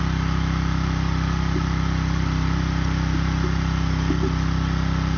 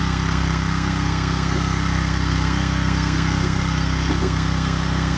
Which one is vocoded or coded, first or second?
second